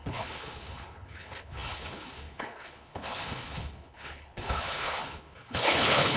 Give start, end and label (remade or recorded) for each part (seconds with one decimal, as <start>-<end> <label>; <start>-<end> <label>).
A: 0.0-6.2 remade